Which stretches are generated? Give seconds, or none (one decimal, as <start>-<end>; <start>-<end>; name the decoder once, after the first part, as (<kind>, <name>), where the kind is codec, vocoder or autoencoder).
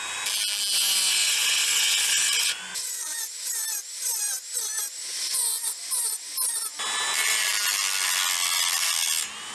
0.7-3.5 (vocoder, Vocos); 5.0-5.9